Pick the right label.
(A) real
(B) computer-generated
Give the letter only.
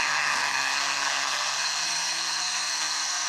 B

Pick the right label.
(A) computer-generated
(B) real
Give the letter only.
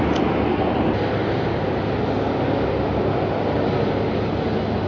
B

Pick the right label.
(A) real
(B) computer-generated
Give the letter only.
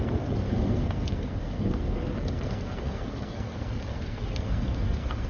B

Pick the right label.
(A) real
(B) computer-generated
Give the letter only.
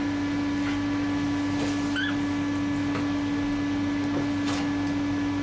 A